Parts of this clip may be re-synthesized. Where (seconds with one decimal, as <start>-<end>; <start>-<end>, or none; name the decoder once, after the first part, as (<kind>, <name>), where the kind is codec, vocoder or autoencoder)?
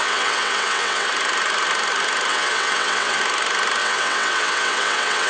0.0-1.1 (vocoder, WaveNeXt); 2.3-3.2; 3.8-5.3